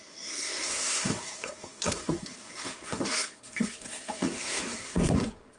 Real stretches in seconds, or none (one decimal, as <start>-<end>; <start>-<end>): none